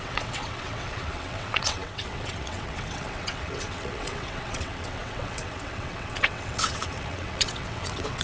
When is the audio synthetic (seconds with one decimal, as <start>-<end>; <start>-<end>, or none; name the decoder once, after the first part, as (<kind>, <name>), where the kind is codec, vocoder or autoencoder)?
0.0-8.2 (vocoder, WaveNeXt)